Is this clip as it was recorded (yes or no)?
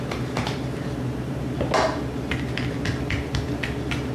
yes